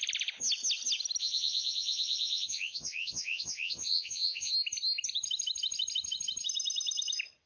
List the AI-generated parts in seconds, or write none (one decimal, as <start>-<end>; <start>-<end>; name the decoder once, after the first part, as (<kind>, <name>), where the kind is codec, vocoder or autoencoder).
1.2-4.5 (vocoder, Vocos)